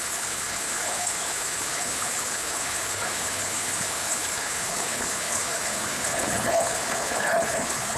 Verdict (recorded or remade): remade